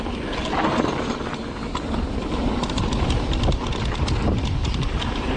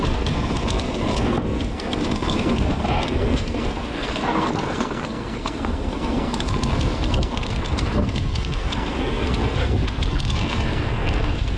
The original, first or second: first